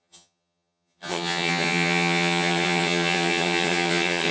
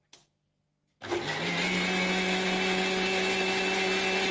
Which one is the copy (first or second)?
first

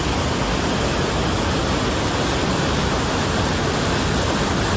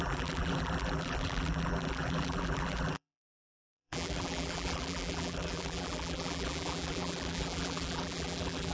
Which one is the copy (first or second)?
second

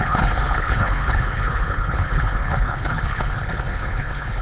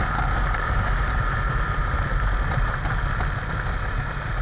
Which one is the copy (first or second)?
first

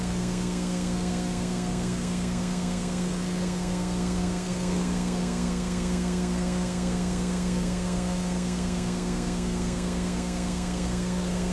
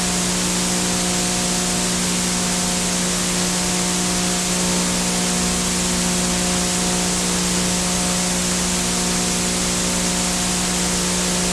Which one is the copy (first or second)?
first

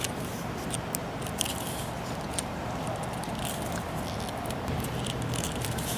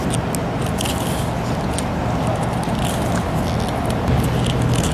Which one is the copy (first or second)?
first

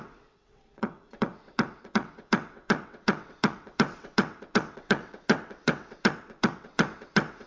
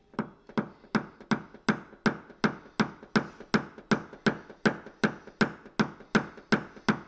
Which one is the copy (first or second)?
first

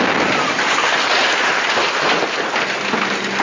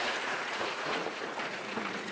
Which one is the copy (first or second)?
second